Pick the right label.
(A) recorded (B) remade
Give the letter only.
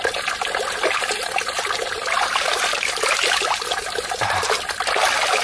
A